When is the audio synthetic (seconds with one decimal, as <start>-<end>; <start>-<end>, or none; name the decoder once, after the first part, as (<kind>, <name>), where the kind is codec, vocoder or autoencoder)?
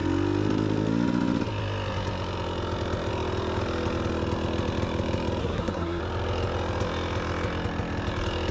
5.4-6.0 (codec, SNAC)